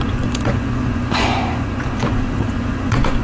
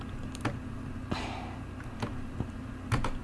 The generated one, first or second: first